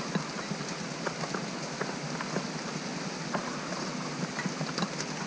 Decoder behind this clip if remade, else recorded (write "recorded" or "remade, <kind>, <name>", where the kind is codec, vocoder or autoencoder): recorded